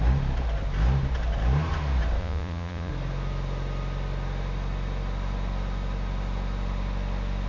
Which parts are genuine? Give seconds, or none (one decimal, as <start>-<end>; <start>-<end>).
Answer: 0.0-2.2; 2.9-7.5